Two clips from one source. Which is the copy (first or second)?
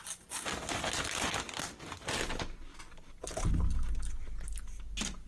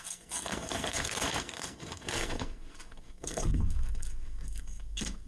second